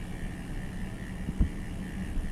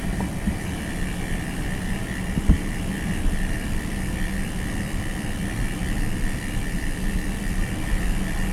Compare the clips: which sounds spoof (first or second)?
second